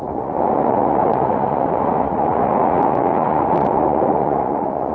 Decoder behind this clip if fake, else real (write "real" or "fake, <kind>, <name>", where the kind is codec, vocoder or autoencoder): fake, vocoder, Vocos